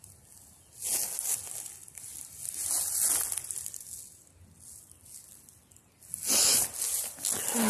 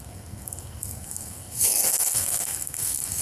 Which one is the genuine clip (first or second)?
first